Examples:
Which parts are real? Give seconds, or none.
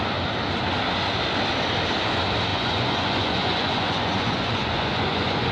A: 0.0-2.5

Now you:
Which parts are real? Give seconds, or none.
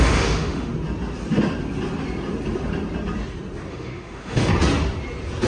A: 0.7-3.7; 4.5-5.5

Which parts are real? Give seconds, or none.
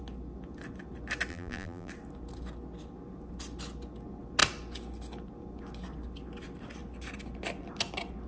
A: 0.0-1.3; 1.9-8.3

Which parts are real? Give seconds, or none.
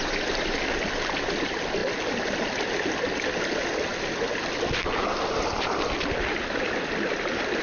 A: 0.0-7.6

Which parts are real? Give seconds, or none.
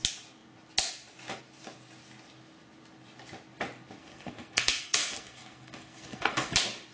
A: 0.0-4.0; 6.5-6.9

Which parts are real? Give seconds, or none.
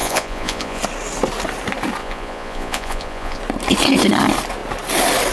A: 0.8-2.0; 3.4-5.3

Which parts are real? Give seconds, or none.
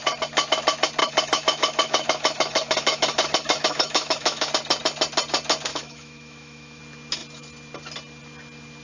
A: 0.0-1.0; 4.5-5.7; 6.8-8.8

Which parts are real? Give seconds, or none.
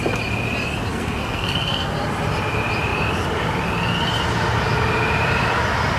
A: 0.0-0.9; 1.9-6.0